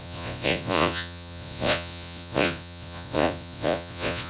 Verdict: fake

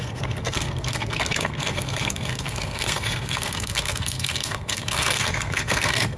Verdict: fake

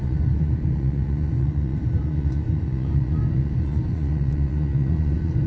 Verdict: fake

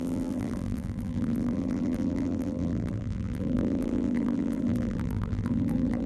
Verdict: fake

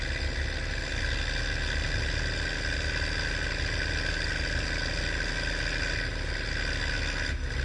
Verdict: real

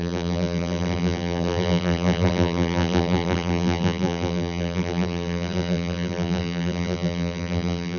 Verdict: fake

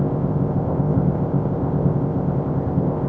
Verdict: fake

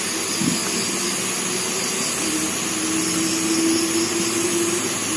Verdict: real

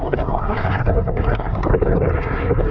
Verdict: fake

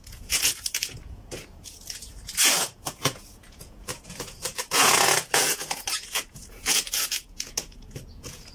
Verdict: fake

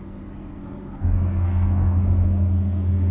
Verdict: fake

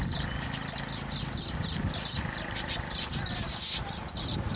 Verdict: real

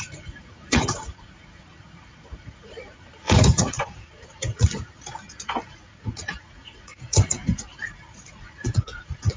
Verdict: fake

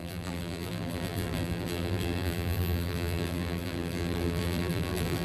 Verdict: fake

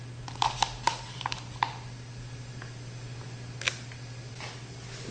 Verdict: real